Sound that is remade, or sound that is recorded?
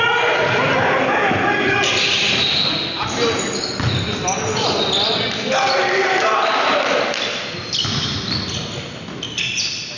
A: recorded